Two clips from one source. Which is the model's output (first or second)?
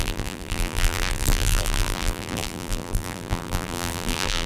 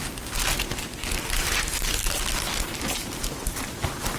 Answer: first